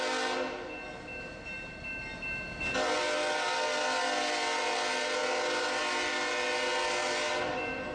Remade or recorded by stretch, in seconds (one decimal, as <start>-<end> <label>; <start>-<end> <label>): 0.0-7.9 recorded